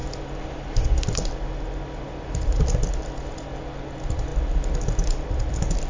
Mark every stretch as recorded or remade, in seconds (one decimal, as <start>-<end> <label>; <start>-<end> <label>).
0.0-5.9 recorded